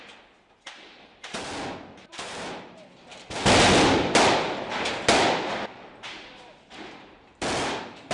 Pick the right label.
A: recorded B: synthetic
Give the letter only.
A